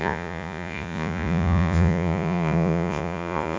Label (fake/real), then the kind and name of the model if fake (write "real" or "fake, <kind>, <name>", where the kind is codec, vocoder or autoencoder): fake, vocoder, Vocos